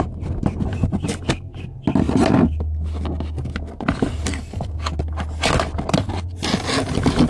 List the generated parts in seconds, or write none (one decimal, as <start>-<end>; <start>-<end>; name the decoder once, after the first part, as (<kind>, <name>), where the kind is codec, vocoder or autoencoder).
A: 4.3-5.0 (codec, SNAC)